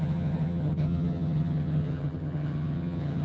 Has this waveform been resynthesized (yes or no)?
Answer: yes